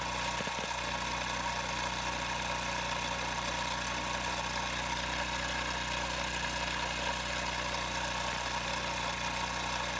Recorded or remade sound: recorded